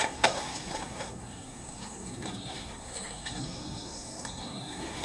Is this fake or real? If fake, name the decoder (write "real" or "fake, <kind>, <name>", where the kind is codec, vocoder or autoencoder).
fake, codec, SNAC